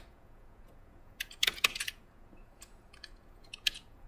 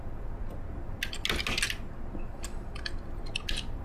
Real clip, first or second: second